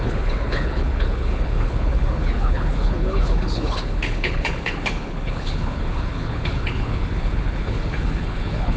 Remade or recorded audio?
remade